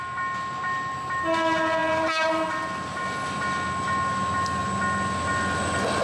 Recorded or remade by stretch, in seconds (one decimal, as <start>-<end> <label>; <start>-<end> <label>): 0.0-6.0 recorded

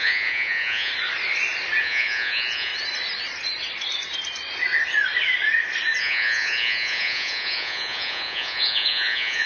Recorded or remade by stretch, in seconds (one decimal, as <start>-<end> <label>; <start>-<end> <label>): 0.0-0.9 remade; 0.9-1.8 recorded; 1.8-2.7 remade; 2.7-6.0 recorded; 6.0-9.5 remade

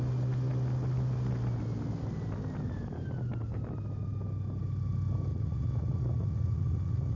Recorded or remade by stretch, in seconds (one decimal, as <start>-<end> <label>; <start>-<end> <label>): 0.0-5.3 recorded; 5.3-7.2 remade

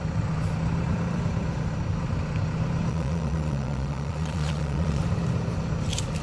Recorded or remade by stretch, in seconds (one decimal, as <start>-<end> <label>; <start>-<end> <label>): 0.0-2.9 recorded; 2.9-5.0 remade; 5.0-6.2 recorded